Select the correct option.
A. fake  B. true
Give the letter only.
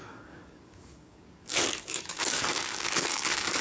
A